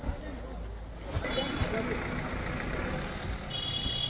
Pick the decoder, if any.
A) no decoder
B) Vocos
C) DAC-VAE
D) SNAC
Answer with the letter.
A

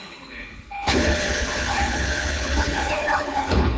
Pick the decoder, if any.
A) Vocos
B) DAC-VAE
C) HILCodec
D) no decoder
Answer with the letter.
C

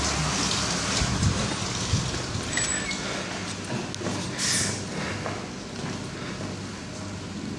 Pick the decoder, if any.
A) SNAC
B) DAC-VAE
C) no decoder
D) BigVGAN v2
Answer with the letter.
C